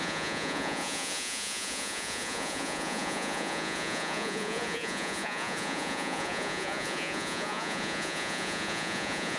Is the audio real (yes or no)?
no